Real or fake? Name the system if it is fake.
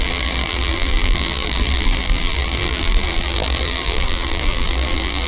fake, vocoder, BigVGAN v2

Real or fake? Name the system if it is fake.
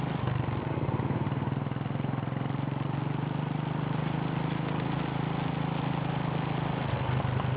real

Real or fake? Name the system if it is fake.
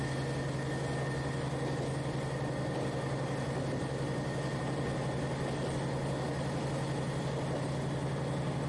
real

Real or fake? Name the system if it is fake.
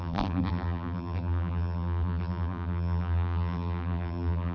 fake, vocoder, BigVGAN v2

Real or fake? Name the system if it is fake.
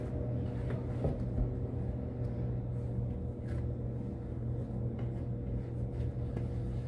real